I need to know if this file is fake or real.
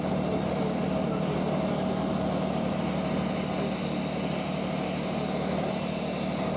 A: real